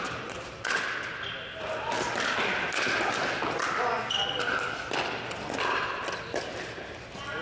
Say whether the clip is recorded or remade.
recorded